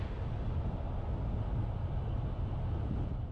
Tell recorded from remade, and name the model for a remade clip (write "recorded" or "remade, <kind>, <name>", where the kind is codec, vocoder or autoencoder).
recorded